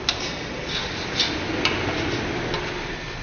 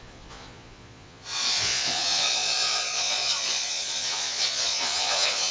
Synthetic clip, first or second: second